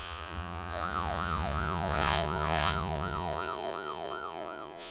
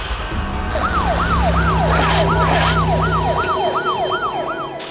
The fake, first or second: first